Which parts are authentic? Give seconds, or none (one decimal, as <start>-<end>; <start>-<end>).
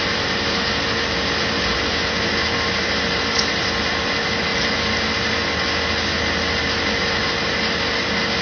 0.0-8.4